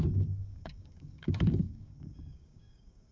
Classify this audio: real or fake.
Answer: fake